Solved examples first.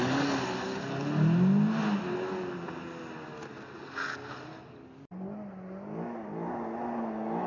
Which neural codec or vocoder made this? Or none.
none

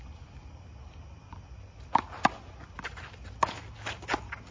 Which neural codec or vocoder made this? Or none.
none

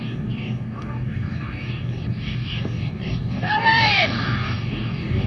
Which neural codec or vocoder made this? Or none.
codec, DAC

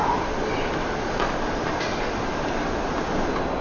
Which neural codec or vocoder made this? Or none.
none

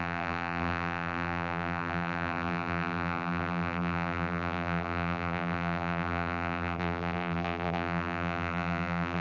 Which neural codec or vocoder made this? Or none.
vocoder, BigVGAN v2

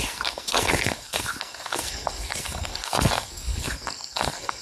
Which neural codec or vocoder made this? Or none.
codec, SNAC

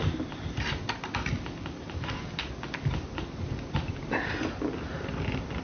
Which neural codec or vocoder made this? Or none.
none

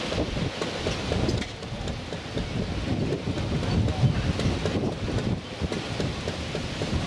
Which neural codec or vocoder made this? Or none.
none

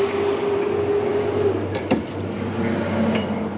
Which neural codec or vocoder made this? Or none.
none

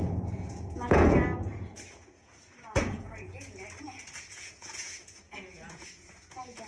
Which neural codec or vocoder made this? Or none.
vocoder, Vocos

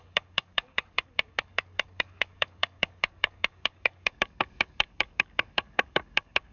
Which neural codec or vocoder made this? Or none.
codec, DAC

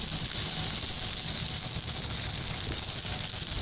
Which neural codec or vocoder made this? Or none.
none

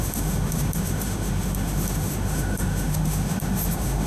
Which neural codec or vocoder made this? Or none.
autoencoder, DAC-VAE